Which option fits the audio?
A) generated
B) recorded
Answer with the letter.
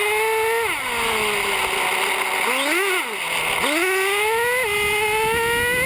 B